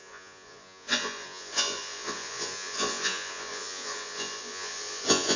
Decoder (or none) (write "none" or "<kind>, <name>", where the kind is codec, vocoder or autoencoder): vocoder, Vocos